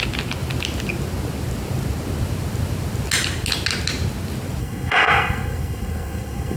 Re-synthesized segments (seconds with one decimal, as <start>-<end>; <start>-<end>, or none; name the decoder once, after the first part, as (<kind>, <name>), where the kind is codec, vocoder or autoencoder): 4.6-6.6 (codec, SNAC)